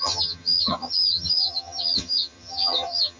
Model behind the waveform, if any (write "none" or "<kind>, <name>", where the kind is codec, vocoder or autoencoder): vocoder, HiFi-GAN